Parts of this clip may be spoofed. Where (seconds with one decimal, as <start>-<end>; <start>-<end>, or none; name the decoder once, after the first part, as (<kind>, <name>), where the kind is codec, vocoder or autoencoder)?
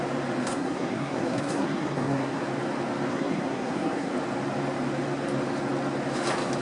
0.4-2.4 (codec, SNAC); 3.1-4.1